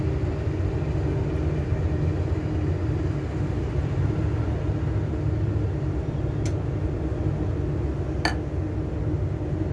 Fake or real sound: real